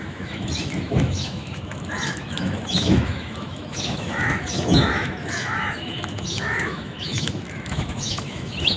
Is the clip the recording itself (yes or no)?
no